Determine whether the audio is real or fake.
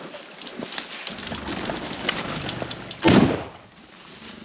real